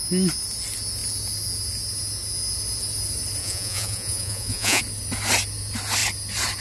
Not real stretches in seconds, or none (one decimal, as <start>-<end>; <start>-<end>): 3.4-4.8